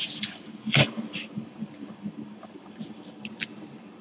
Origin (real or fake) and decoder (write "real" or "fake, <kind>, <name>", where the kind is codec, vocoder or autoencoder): fake, vocoder, BigVGAN v2